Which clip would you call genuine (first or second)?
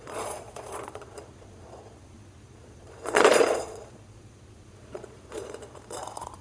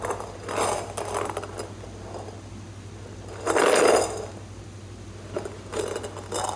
second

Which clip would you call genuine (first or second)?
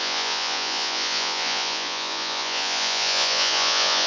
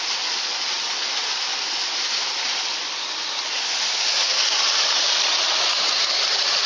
second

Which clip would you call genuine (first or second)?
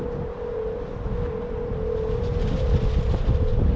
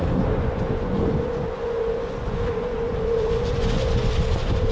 first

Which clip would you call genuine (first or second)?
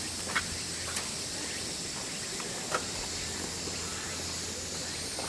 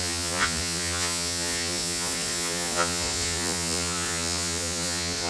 first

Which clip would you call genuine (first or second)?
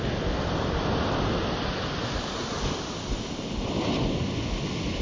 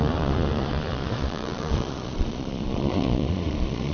first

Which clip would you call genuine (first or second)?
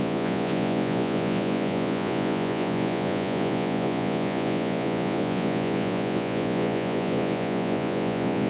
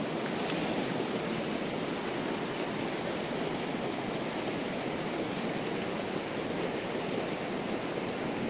second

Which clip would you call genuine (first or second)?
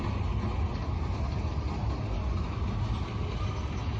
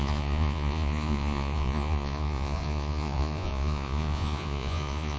first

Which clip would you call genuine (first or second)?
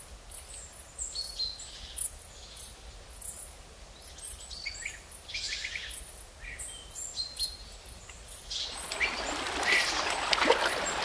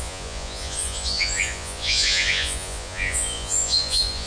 first